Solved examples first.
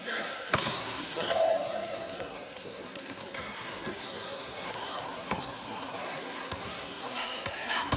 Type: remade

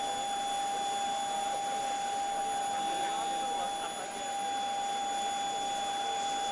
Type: recorded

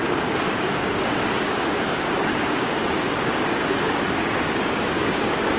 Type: remade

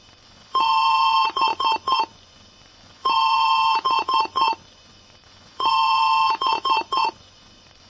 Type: remade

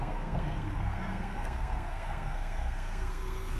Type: remade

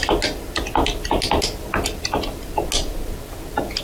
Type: recorded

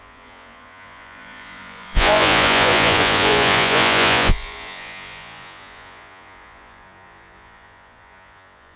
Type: remade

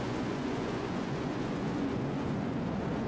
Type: remade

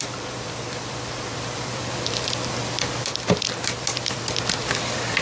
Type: remade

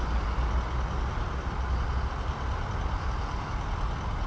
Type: recorded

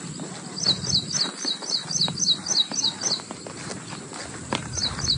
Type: recorded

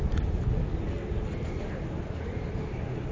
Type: recorded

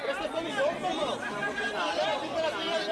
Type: recorded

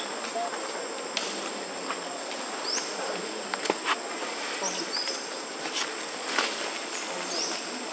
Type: recorded